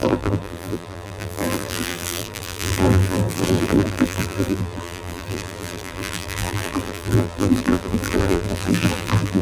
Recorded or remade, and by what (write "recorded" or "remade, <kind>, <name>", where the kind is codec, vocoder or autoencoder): remade, vocoder, BigVGAN v2